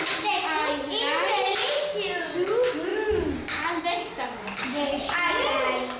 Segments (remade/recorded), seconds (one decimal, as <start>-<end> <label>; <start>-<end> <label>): 0.0-6.0 recorded